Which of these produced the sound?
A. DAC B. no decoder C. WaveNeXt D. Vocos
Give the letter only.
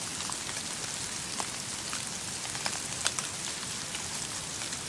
B